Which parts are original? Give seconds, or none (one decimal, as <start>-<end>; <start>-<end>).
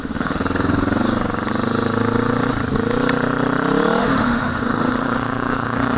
0.4-4.0